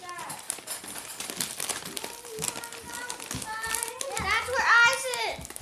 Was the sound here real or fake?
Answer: real